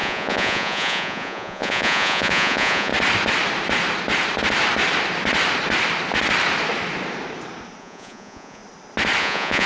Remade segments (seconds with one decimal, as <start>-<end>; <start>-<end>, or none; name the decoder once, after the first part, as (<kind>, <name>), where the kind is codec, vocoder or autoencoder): 0.0-2.9 (vocoder, Vocos); 7.8-8.6; 9.2-9.7